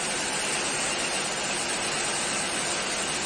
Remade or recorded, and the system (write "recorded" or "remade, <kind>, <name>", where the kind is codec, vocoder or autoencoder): recorded